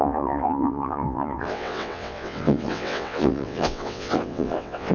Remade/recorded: remade